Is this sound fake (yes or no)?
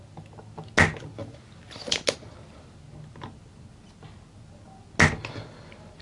no